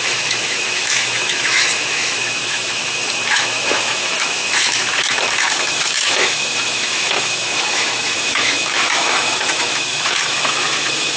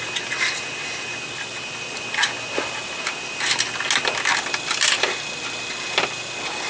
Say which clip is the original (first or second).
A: second